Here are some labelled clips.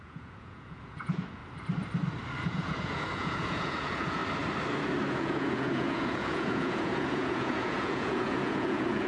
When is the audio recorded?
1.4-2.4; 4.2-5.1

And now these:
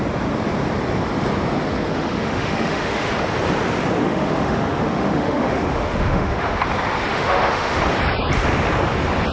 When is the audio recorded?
0.0-1.9; 3.1-4.0; 6.6-7.1; 7.8-9.3

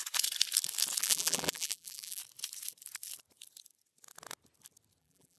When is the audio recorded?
0.0-1.0; 2.2-5.0